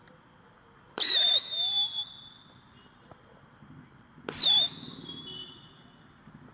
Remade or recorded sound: recorded